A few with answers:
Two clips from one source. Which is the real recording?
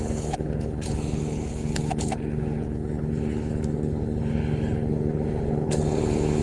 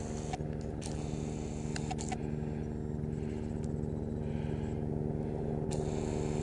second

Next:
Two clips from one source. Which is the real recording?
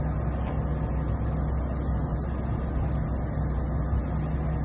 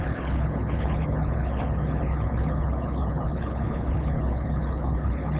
first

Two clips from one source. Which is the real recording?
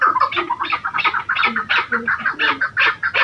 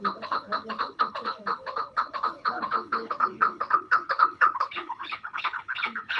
first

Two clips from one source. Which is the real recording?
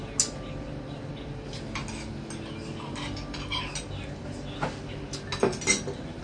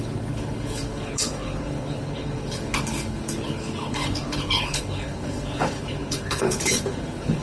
first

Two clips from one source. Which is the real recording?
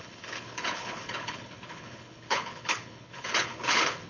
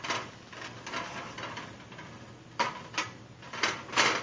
second